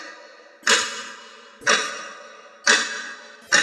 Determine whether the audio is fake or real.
real